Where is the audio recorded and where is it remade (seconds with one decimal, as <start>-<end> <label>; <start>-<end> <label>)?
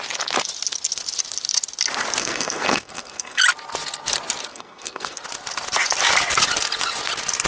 0.0-2.2 recorded; 2.2-3.4 remade; 3.4-4.5 recorded; 4.5-5.2 remade; 5.2-7.5 recorded